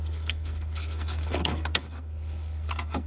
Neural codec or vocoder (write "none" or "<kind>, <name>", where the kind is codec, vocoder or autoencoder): codec, SNAC